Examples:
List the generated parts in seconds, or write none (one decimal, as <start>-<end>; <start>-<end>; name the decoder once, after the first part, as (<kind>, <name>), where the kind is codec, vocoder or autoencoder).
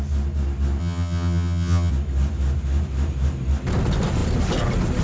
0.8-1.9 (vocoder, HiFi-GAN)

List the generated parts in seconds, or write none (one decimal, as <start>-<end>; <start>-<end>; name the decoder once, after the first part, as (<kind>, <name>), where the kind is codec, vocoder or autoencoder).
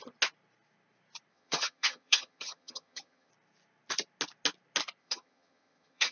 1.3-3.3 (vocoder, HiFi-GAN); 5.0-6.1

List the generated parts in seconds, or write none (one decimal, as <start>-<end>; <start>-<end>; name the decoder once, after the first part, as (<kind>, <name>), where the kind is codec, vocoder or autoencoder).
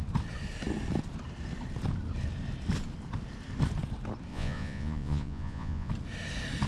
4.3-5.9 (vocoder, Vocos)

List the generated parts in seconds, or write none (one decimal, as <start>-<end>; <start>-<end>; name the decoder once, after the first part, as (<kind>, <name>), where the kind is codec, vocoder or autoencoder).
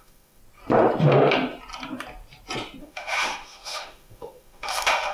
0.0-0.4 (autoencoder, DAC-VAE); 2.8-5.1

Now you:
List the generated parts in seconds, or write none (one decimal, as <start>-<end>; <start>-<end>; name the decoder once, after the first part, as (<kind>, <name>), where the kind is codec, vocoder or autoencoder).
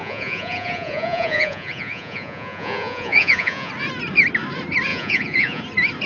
0.0-3.7 (vocoder, Vocos); 4.9-5.6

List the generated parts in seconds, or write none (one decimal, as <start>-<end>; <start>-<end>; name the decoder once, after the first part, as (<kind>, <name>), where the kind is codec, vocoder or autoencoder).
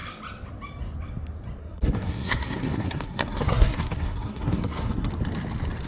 1.6-5.1 (codec, SNAC)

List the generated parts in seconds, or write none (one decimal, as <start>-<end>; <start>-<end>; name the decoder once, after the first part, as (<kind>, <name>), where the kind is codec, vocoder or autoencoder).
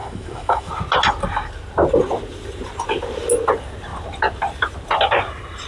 0.0-0.7 (autoencoder, DAC-VAE)